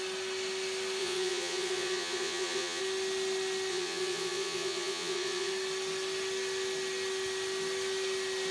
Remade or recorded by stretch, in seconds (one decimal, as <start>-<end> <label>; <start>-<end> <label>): 0.0-1.0 recorded; 1.0-2.8 remade; 2.8-3.7 recorded; 3.7-5.5 remade; 5.5-8.5 recorded